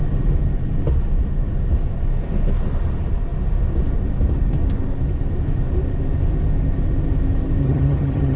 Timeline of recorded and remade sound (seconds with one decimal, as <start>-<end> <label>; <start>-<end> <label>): 0.0-7.6 recorded; 7.6-8.4 remade